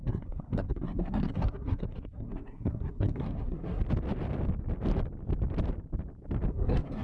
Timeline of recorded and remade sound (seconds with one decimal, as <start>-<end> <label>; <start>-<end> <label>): 0.0-3.8 remade; 3.8-6.5 recorded; 6.5-7.0 remade